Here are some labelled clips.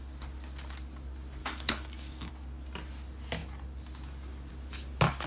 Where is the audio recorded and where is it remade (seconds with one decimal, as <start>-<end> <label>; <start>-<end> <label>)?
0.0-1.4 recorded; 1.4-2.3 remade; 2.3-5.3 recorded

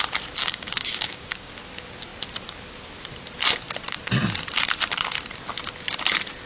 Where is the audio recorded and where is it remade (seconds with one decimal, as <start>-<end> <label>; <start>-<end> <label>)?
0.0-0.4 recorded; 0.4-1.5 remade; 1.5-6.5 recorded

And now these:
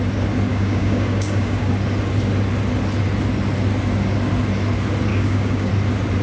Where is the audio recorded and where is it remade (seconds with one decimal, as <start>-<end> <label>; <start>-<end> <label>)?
0.0-0.5 recorded; 0.5-1.7 remade; 1.7-5.1 recorded; 5.1-5.7 remade; 5.7-6.2 recorded

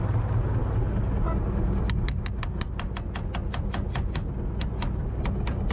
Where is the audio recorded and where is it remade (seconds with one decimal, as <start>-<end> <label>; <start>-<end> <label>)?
0.0-5.7 recorded

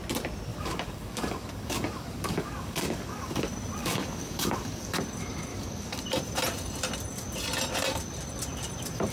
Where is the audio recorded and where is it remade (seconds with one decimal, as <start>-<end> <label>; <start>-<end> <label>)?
0.0-0.5 recorded; 0.5-3.4 remade; 3.4-3.8 recorded; 3.8-5.0 remade; 5.0-5.5 recorded; 5.5-6.0 remade; 6.0-9.1 recorded

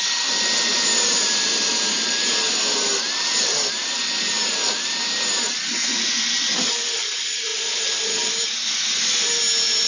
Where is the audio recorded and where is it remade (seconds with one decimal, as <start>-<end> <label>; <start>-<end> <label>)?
0.0-9.9 recorded